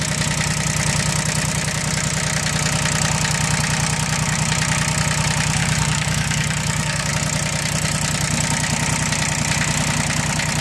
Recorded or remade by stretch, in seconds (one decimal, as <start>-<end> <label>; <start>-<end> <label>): 0.0-5.6 recorded; 5.6-7.1 remade; 7.1-10.6 recorded